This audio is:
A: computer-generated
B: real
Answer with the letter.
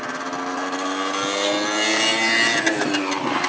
B